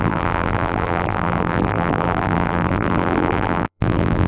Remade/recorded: remade